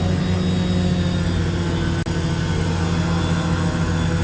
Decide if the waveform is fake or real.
real